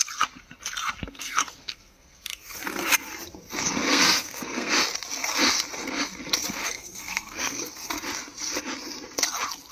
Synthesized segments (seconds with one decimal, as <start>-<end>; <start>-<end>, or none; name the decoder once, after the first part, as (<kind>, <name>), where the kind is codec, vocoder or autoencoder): 1.0-2.6 (codec, SNAC); 3.9-4.7; 6.6-7.9